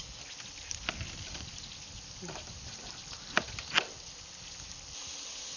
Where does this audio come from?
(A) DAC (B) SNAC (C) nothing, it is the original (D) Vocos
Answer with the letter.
C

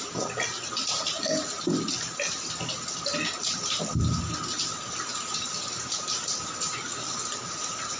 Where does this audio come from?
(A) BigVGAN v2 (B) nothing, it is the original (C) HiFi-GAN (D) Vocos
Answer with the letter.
B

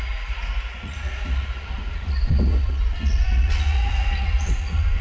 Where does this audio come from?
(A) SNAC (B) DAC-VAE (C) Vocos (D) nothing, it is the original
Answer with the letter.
C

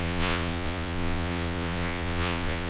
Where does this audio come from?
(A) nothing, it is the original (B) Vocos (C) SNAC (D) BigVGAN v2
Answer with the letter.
B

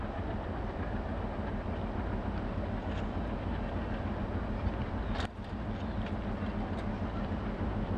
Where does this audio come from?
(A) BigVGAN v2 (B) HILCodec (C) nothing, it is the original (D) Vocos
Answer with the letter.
C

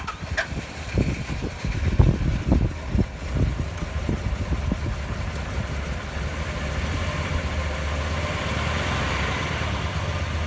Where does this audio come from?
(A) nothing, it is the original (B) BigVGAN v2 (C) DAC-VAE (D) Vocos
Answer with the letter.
A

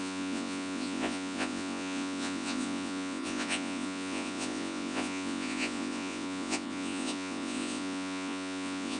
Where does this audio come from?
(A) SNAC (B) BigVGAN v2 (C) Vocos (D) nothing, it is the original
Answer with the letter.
C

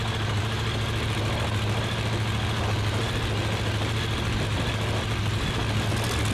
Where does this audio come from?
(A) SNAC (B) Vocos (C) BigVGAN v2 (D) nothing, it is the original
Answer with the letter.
D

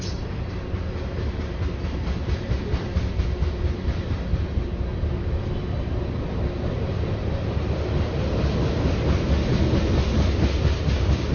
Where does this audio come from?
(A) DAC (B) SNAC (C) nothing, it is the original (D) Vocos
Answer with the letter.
C